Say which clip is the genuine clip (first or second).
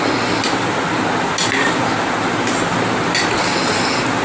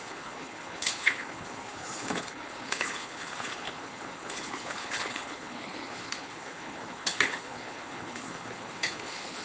first